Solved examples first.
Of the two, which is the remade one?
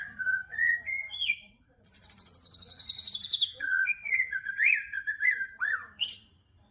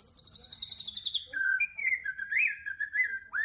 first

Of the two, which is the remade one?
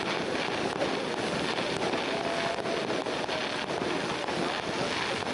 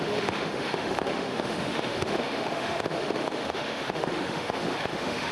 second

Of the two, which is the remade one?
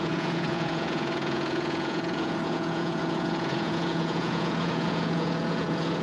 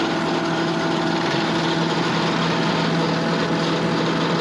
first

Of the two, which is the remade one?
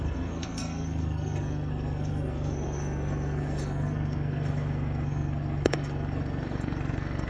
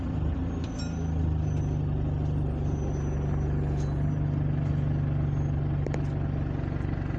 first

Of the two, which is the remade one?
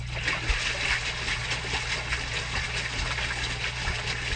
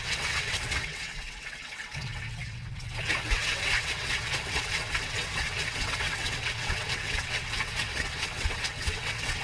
second